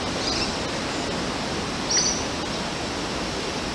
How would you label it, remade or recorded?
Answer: recorded